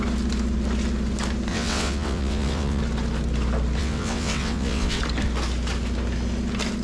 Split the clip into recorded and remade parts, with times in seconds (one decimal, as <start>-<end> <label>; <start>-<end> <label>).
0.0-1.5 recorded; 1.5-2.8 remade; 2.8-3.8 recorded; 3.8-5.0 remade; 5.0-6.8 recorded